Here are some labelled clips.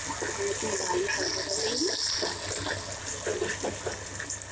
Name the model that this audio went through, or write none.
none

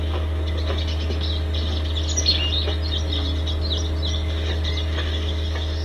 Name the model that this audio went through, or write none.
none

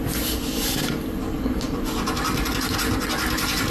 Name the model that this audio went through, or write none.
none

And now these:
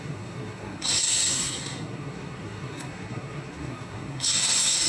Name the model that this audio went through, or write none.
codec, SNAC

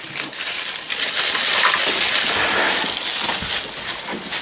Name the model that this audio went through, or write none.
none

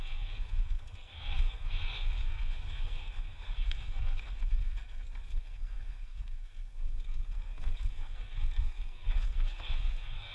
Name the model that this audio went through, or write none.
codec, SNAC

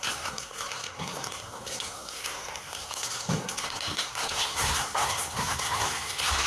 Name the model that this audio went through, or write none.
codec, SNAC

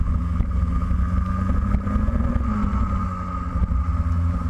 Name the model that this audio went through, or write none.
none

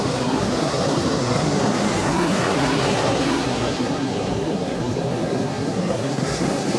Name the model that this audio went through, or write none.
codec, SNAC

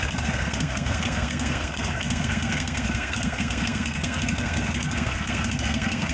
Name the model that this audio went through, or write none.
codec, SNAC